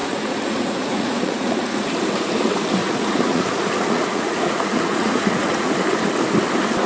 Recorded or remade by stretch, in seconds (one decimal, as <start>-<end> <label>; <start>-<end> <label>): 0.0-1.9 remade; 1.9-2.8 recorded; 2.8-5.7 remade; 5.7-6.9 recorded